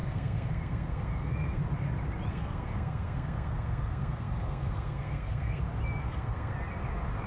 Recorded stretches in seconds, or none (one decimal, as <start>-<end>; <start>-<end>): 1.6-2.3; 5.6-6.0; 6.5-7.3